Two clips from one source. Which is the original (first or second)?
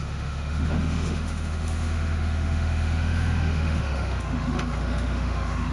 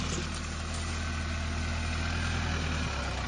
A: second